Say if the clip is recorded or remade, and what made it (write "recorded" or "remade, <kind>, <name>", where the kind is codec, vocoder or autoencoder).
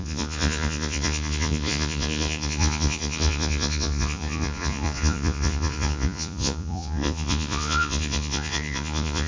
remade, vocoder, Vocos